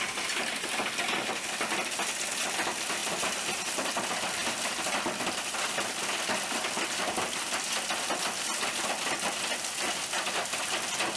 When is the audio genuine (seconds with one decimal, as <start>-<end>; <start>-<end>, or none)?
0.0-11.2